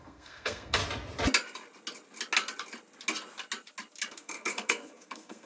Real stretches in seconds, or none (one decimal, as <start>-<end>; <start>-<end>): 0.8-4.1